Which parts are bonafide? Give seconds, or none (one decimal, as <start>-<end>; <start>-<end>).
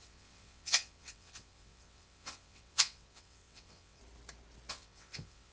4.0-4.7